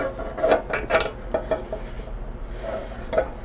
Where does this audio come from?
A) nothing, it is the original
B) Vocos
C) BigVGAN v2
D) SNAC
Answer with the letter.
A